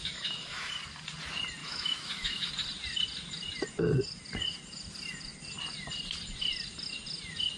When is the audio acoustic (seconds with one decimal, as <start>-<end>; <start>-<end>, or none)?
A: 0.7-1.6; 2.5-7.6